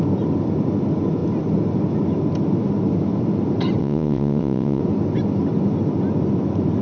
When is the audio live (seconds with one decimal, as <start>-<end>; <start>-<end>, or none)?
0.0-3.8; 4.8-6.8